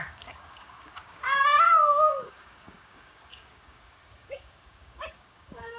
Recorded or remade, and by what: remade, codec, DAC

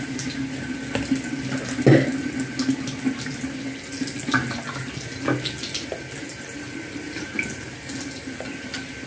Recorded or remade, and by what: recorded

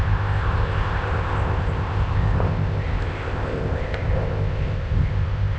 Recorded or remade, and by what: remade, codec, ZipCodec